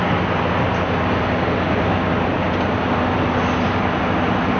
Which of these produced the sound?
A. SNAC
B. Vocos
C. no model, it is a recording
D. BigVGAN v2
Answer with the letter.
C